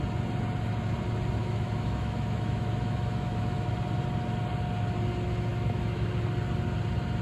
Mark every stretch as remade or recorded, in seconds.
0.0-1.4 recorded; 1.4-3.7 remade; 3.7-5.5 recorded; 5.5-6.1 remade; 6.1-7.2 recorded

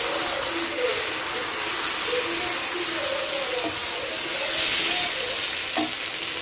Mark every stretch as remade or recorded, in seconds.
0.0-6.4 recorded